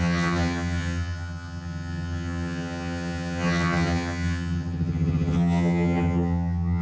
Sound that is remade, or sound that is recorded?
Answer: remade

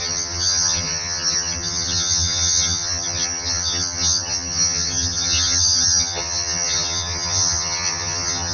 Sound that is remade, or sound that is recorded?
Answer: remade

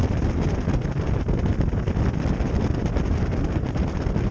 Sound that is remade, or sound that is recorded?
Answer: recorded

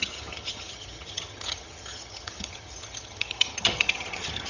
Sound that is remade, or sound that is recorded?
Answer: remade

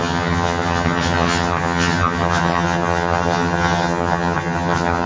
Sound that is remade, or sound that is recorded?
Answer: remade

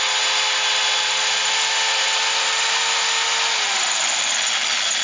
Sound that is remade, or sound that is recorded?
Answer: recorded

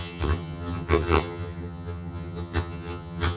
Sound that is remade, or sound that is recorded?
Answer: remade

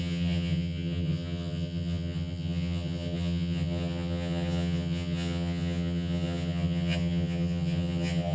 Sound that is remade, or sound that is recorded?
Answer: remade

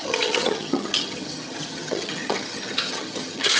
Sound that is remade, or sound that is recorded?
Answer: remade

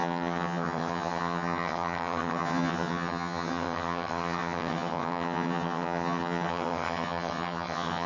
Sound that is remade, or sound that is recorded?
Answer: remade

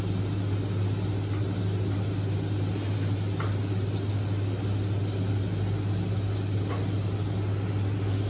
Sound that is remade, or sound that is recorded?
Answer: recorded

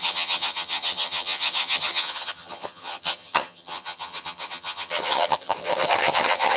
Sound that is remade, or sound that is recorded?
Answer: remade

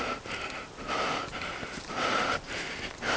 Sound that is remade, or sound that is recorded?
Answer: recorded